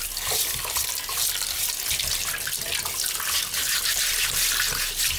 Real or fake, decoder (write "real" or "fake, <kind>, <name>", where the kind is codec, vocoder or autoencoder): real